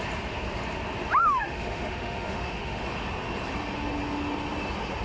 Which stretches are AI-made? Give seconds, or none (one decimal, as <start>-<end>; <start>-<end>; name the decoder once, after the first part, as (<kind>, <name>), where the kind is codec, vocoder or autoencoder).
1.2-2.8 (autoencoder, DAC-VAE)